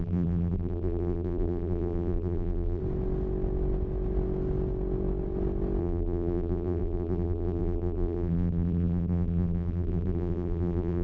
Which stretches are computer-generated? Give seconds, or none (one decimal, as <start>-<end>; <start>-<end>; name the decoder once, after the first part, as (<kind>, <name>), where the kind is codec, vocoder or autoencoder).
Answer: 0.0-2.8 (vocoder, BigVGAN v2); 5.8-11.0